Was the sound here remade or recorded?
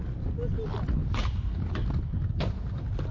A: recorded